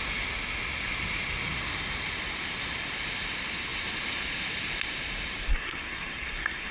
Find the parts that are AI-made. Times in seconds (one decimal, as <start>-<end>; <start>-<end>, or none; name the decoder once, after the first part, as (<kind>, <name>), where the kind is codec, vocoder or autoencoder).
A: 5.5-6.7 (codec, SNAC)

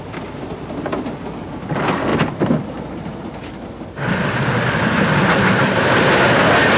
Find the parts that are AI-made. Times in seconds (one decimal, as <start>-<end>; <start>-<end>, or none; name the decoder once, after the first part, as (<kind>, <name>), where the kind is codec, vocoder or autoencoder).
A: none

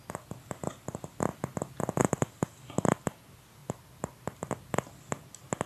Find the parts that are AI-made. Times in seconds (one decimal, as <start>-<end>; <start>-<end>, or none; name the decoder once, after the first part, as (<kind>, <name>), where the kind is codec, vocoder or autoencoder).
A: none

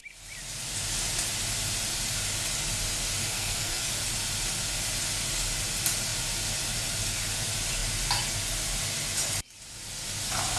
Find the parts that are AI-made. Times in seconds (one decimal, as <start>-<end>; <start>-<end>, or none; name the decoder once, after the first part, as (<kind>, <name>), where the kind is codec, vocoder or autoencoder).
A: 3.2-3.9 (codec, SNAC)

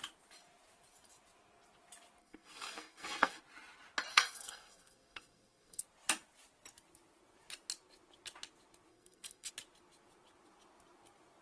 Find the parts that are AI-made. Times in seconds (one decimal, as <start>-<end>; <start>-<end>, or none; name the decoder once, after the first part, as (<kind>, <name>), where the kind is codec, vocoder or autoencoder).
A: 2.2-3.4 (codec, SNAC); 4.1-5.8; 8.9-9.5

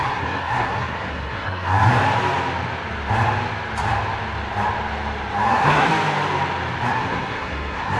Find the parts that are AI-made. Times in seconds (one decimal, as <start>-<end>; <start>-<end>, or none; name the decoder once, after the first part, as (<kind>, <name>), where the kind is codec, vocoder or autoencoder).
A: 0.0-1.9 (codec, SNAC); 5.5-5.9; 6.9-8.0

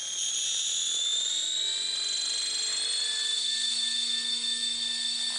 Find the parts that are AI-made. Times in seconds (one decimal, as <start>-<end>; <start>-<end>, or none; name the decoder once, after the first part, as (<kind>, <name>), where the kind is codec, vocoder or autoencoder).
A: none